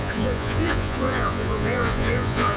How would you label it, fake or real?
fake